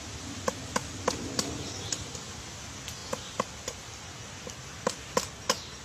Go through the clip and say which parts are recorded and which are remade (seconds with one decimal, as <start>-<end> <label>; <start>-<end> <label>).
0.0-0.8 recorded; 0.8-2.3 remade; 2.3-3.0 recorded; 3.0-4.5 remade; 4.5-5.8 recorded